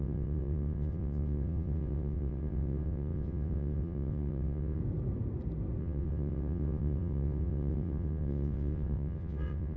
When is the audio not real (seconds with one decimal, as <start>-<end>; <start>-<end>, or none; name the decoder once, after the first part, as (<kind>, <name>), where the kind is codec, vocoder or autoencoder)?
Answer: 0.0-4.8 (vocoder, WaveNeXt); 5.8-9.8